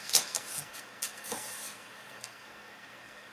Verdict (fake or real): fake